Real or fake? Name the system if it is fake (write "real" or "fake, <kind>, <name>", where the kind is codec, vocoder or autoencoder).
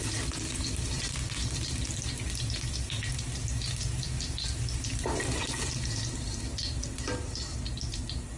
real